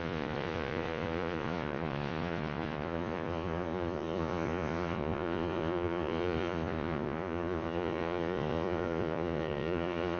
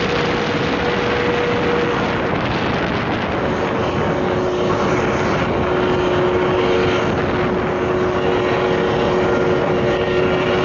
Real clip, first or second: second